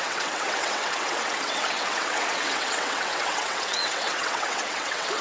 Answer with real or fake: fake